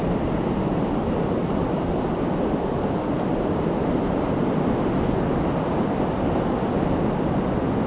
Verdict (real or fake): real